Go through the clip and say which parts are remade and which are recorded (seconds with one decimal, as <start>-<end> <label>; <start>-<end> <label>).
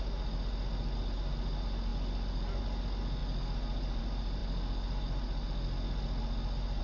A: 0.0-6.8 recorded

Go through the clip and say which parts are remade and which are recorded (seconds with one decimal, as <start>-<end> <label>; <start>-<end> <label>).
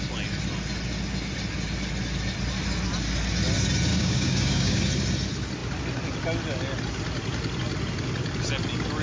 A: 0.0-3.9 recorded; 3.9-4.8 remade; 4.8-9.0 recorded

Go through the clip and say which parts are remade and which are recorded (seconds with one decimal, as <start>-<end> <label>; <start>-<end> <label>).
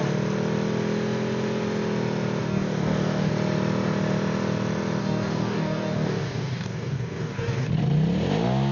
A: 0.0-2.4 recorded; 2.4-3.3 remade; 3.3-5.0 recorded; 5.0-7.7 remade; 7.7-8.7 recorded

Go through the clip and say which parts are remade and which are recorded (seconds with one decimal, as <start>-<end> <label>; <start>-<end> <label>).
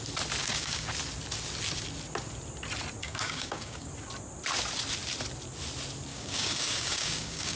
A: 0.0-0.4 recorded; 0.4-0.9 remade; 0.9-3.0 recorded; 3.0-3.9 remade; 3.9-6.1 recorded; 6.1-7.6 remade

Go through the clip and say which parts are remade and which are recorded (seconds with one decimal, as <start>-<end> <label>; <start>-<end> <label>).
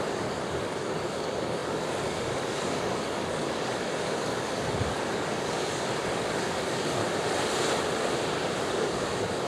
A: 0.0-7.0 remade; 7.0-8.7 recorded; 8.7-9.5 remade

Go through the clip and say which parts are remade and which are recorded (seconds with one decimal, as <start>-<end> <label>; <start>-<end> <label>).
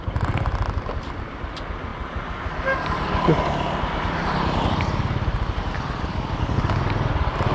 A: 0.0-6.1 recorded; 6.1-6.8 remade; 6.8-7.5 recorded